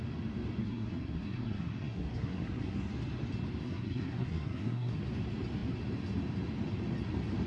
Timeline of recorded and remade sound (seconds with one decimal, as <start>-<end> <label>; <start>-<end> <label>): 0.0-0.6 recorded; 0.6-2.9 remade; 2.9-3.6 recorded; 3.6-5.0 remade; 5.0-7.5 recorded